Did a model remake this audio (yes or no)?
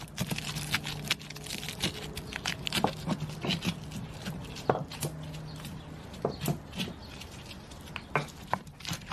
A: no